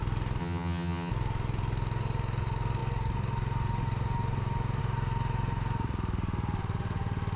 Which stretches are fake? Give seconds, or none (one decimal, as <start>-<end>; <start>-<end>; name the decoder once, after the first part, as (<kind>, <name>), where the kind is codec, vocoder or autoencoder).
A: 0.4-1.1 (vocoder, HiFi-GAN)